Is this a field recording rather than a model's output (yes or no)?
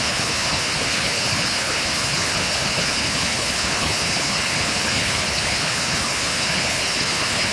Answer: no